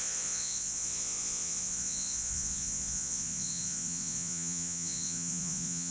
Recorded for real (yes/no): no